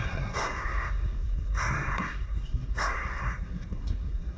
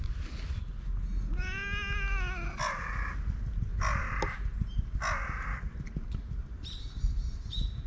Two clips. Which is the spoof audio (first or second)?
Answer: first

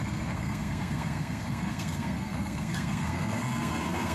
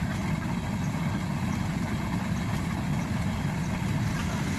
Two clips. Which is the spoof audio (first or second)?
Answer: first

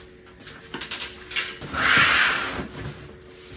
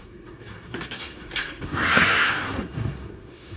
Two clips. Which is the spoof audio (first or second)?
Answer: second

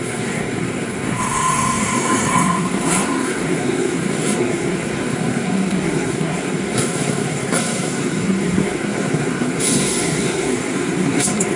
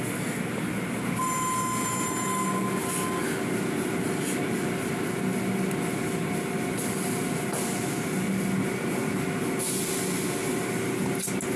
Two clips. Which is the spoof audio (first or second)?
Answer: first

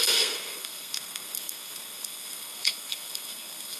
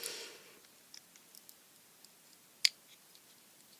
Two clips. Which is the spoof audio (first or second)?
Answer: first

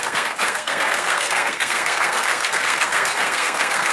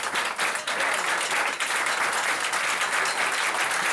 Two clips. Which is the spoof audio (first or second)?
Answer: first